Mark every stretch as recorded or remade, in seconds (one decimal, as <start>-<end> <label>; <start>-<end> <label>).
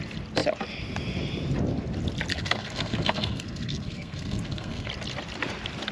0.0-2.3 recorded; 2.3-4.9 remade; 4.9-5.9 recorded